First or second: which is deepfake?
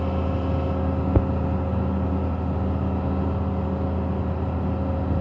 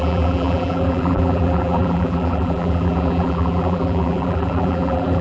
second